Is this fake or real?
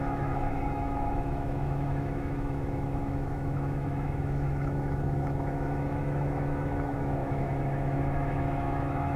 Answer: fake